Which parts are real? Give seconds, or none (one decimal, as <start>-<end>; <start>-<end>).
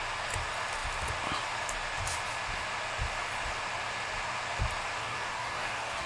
0.0-5.0